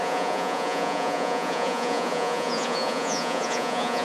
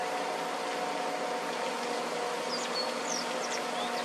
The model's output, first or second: first